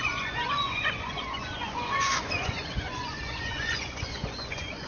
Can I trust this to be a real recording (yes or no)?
no